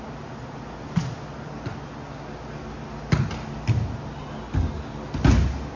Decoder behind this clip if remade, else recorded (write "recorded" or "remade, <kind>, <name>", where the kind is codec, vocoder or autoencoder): recorded